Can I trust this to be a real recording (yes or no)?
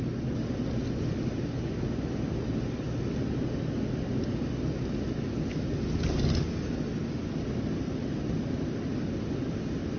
yes